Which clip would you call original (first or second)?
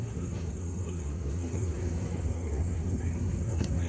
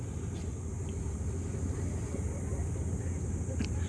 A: second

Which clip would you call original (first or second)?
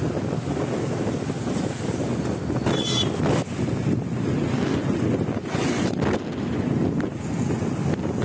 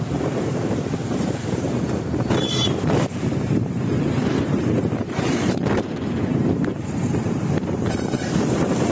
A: first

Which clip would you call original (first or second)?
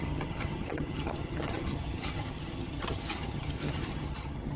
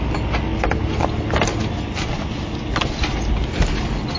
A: second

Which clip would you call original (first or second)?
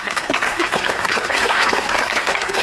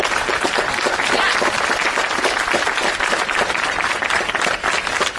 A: second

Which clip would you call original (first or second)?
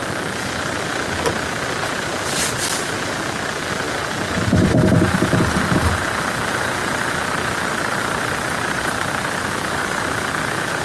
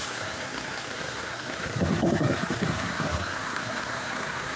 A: first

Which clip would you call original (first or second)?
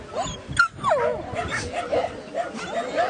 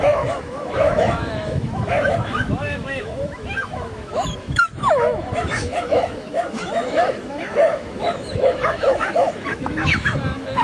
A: first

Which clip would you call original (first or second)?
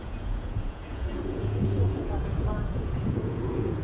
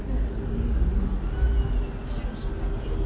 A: second